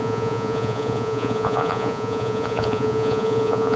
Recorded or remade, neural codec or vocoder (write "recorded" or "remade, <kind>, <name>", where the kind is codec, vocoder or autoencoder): remade, vocoder, Vocos